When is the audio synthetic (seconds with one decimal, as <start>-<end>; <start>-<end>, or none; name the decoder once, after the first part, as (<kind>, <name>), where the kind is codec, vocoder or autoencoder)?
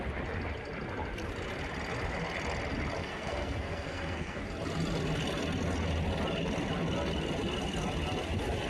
3.0-4.4 (codec, SNAC)